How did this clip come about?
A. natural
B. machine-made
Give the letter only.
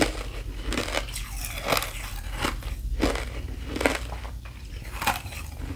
A